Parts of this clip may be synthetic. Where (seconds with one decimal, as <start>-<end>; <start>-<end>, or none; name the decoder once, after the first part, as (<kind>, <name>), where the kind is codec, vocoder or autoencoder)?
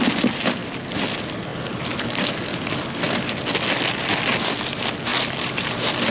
1.5-3.9 (vocoder, BigVGAN v2); 5.1-6.1